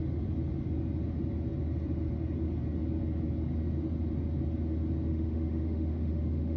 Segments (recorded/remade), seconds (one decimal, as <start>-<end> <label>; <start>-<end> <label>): 0.0-5.1 recorded; 5.1-6.6 remade